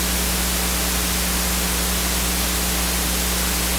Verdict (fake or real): real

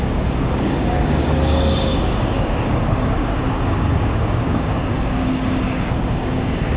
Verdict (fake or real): fake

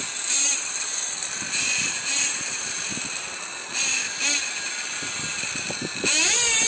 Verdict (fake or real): real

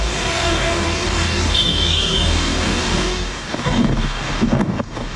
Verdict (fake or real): fake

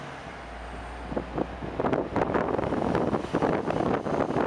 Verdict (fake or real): real